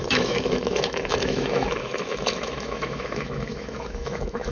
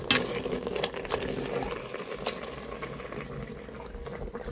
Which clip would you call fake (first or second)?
first